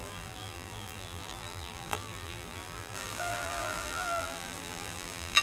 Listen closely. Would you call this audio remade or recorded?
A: remade